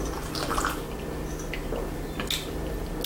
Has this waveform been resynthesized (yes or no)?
no